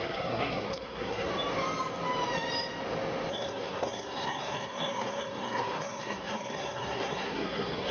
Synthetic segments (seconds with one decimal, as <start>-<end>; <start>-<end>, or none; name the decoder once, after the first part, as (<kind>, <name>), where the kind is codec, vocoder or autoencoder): 0.0-1.3 (codec, SNAC); 3.3-7.9